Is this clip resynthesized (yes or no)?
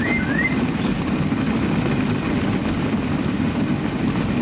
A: no